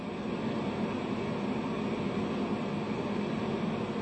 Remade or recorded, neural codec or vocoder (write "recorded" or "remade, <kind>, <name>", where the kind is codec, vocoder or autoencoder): recorded